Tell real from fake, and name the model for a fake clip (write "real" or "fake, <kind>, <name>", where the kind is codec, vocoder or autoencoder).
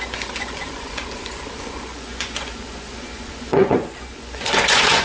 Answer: fake, vocoder, Vocos